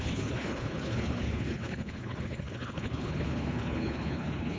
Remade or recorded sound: remade